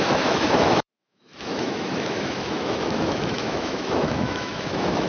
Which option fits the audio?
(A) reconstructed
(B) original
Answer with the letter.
A